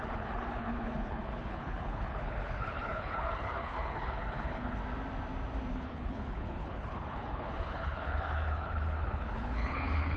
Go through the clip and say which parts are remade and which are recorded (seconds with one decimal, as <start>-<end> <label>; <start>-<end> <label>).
0.0-4.8 remade; 4.8-5.7 recorded; 5.7-10.2 remade